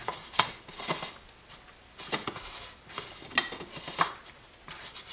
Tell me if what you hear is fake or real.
real